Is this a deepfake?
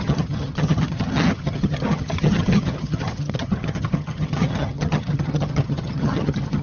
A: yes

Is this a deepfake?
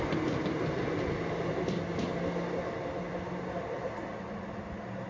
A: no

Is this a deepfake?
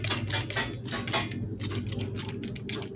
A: no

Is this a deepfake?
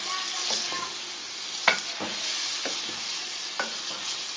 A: no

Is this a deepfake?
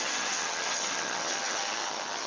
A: yes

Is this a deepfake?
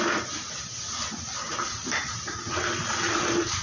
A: no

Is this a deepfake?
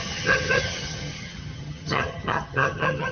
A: yes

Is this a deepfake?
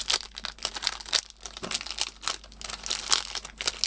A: no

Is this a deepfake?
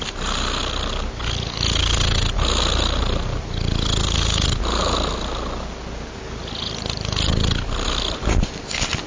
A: no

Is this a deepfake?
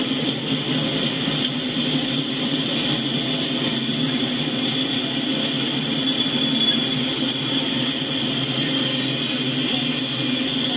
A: no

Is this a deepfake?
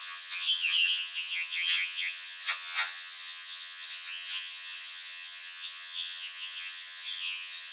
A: yes